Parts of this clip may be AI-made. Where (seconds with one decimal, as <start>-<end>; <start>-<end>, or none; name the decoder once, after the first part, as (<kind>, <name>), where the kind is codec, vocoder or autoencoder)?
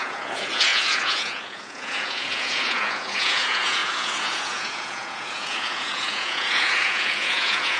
0.0-7.8 (vocoder, Vocos)